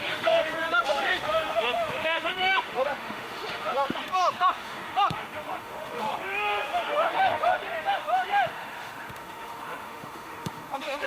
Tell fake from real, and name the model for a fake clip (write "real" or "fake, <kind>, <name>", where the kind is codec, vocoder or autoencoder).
fake, autoencoder, DAC-VAE